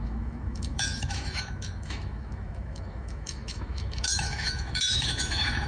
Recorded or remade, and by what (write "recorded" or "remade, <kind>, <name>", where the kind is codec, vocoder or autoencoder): remade, autoencoder, DAC-VAE